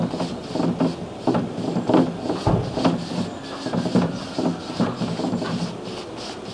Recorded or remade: recorded